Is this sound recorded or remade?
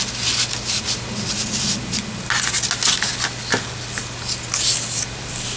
recorded